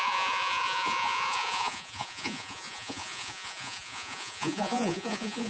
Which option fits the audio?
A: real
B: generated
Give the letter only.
B